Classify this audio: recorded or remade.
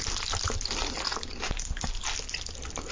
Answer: recorded